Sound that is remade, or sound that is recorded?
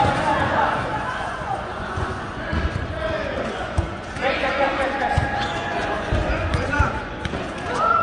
remade